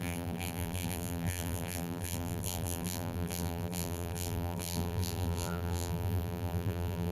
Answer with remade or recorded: remade